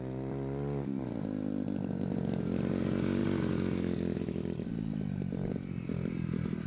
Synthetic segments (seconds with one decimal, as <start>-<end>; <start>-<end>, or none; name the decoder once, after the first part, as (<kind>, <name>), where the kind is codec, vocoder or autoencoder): none

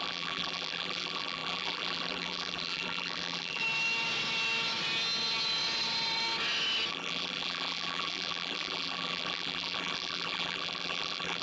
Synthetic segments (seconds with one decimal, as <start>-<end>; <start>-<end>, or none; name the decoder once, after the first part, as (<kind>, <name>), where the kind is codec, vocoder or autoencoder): 0.0-3.6 (vocoder, BigVGAN v2); 6.9-11.4

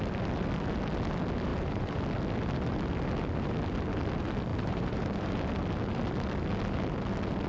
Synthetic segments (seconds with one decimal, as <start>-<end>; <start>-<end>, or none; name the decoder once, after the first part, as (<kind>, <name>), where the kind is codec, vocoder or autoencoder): 1.5-2.0 (vocoder, BigVGAN v2); 4.5-5.4